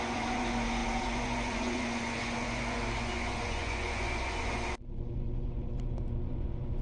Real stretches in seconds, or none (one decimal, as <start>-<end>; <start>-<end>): none